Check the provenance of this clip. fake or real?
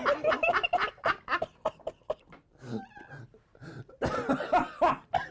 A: real